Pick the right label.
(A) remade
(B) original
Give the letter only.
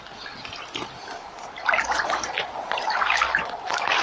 B